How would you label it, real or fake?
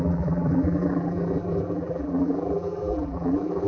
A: fake